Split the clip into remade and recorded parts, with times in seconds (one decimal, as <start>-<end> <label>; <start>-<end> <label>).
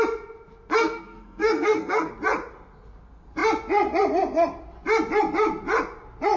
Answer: 0.0-0.8 recorded; 0.8-2.1 remade; 2.1-6.4 recorded